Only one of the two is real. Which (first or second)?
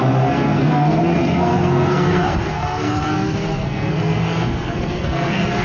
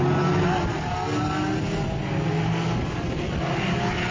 second